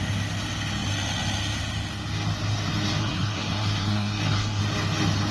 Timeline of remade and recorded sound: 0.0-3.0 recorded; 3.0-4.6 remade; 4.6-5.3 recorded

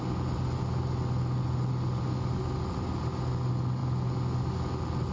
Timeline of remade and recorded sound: 0.0-5.1 recorded

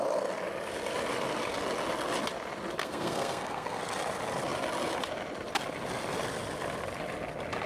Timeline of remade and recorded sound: 0.0-2.8 recorded; 2.8-3.8 remade; 3.8-7.7 recorded

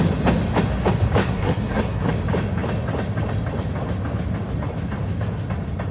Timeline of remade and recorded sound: 0.0-1.2 recorded; 1.2-2.1 remade; 2.1-5.9 recorded